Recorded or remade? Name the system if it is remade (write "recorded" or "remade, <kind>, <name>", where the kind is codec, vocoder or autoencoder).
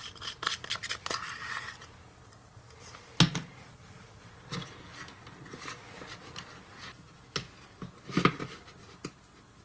recorded